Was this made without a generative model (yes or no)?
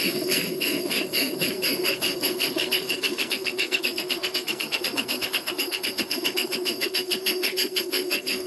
no